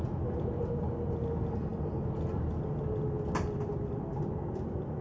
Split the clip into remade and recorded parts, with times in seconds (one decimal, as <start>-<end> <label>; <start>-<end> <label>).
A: 0.0-5.0 recorded